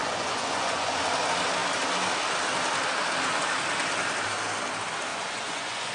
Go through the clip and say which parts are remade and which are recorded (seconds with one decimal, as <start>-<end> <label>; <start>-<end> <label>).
0.0-1.0 remade; 1.0-5.1 recorded; 5.1-5.9 remade